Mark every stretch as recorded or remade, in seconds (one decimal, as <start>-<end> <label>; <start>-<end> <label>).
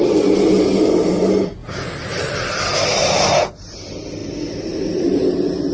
0.0-5.7 recorded